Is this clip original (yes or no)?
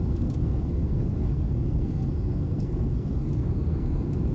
no